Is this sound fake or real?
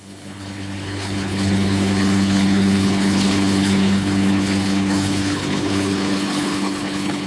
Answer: fake